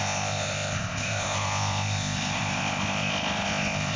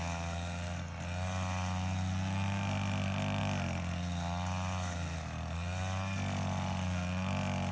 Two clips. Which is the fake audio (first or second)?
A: first